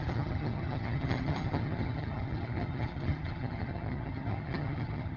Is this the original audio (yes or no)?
no